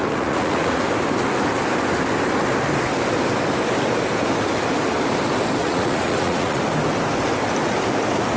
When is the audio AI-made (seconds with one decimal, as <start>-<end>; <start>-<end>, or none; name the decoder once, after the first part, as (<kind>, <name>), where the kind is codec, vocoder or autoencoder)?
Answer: 0.0-0.8 (vocoder, Vocos); 5.6-6.6